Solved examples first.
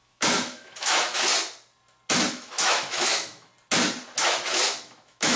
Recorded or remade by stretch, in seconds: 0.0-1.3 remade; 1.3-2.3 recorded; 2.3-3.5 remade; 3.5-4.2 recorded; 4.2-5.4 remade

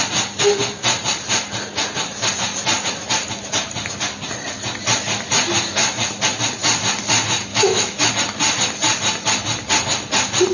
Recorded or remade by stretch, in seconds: 0.0-7.5 recorded; 7.5-8.1 remade; 8.1-10.5 recorded

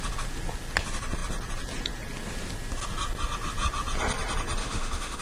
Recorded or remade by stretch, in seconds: 0.0-4.6 recorded; 4.6-5.2 remade

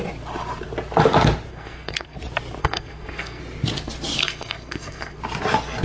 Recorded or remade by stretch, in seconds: 0.0-1.5 recorded; 1.5-2.2 remade; 2.2-2.6 recorded; 2.6-3.4 remade; 3.4-4.2 recorded; 4.2-5.2 remade; 5.2-5.8 recorded

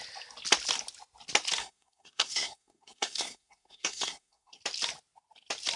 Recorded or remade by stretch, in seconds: 0.0-1.6 recorded; 1.6-4.6 remade; 4.6-5.8 recorded

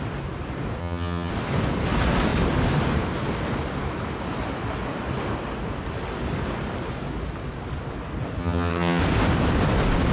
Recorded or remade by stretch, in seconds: 0.0-0.8 recorded; 0.8-1.3 remade; 1.3-8.4 recorded; 8.4-9.0 remade; 9.0-10.1 recorded